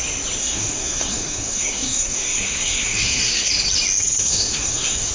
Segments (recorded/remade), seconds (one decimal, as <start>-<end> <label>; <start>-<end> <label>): 0.0-0.4 recorded; 0.4-3.5 remade; 3.5-4.2 recorded; 4.2-5.1 remade